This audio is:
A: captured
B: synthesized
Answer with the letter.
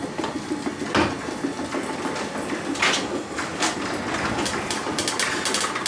A